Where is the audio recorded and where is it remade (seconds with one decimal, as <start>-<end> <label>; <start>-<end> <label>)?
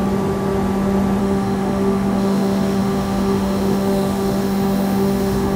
0.0-1.2 recorded; 1.2-5.6 remade